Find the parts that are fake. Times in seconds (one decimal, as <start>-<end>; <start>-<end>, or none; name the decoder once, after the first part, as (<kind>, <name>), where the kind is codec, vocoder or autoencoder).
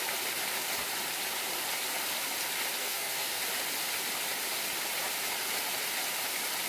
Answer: 2.8-3.4 (codec, SNAC)